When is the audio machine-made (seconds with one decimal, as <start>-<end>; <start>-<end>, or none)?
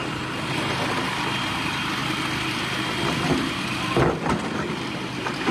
none